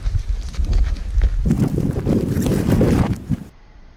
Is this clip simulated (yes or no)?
no